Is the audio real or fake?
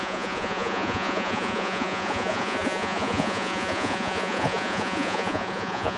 fake